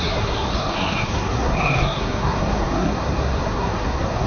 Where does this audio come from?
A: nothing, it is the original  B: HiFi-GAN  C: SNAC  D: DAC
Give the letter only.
C